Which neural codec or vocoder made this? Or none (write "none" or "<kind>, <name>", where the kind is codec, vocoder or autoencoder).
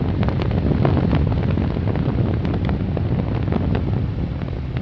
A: none